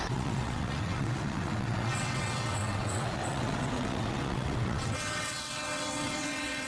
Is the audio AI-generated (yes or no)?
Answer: yes